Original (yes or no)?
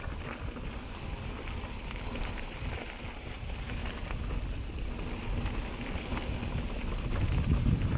yes